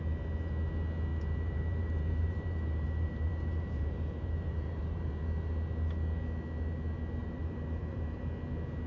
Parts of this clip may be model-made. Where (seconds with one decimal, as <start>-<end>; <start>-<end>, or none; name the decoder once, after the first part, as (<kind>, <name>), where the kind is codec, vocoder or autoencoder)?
1.1-5.2 (vocoder, BigVGAN v2); 7.2-8.2